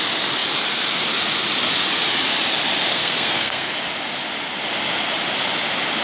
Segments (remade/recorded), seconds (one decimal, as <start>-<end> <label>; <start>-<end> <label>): 0.0-2.9 recorded; 2.9-3.7 remade; 3.7-6.0 recorded